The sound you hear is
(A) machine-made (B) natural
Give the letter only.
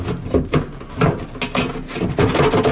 B